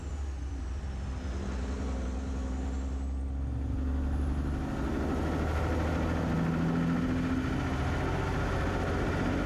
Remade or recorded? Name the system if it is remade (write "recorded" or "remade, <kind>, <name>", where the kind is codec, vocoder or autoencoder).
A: recorded